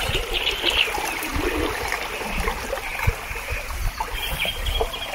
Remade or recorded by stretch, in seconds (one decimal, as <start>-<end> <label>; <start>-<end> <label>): 0.0-5.1 recorded

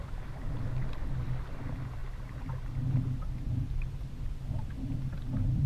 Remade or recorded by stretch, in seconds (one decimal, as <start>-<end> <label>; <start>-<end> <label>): 0.0-5.7 recorded